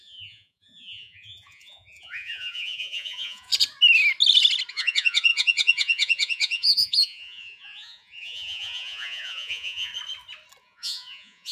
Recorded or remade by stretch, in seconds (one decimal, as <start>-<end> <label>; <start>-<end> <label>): 0.0-3.5 remade; 3.5-4.7 recorded; 4.7-9.9 remade; 9.9-10.6 recorded; 10.6-11.5 remade

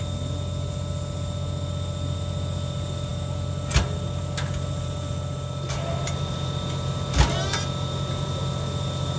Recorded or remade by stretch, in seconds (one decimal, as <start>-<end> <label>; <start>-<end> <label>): 0.0-9.2 recorded

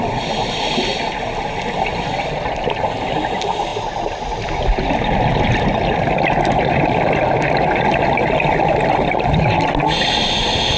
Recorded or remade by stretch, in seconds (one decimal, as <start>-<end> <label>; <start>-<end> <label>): 0.0-10.8 recorded